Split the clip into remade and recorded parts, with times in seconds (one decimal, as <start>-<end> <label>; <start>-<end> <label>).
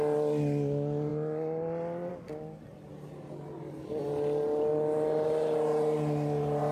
0.0-6.7 recorded